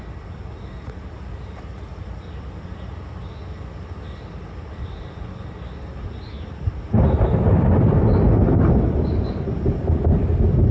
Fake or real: real